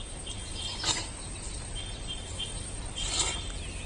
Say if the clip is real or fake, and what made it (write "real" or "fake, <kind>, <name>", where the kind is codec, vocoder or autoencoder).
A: real